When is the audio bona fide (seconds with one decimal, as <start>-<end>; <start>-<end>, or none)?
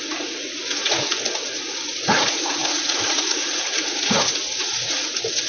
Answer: none